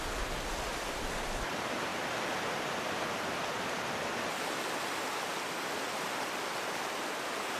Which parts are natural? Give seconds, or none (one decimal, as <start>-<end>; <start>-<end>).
0.0-7.6

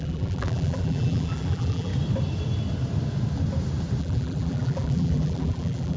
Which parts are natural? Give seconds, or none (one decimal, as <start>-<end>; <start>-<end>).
1.9-4.0

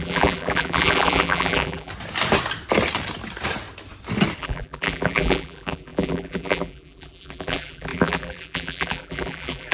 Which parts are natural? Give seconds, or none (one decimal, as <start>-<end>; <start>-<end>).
1.9-4.4

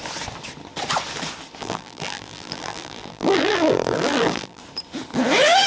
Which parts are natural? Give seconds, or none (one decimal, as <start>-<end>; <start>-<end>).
0.0-1.6; 4.6-5.7

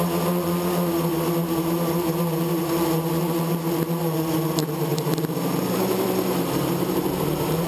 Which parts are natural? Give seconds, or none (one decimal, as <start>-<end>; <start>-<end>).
0.0-4.9

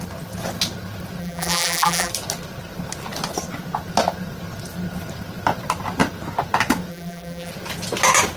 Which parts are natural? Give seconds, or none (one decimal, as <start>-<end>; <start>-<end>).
0.0-1.2; 2.1-6.9; 7.5-8.4

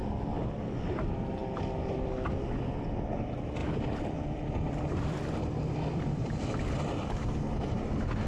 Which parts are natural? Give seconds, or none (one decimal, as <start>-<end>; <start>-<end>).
0.0-3.6; 7.8-8.3